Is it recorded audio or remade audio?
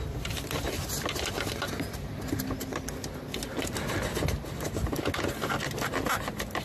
recorded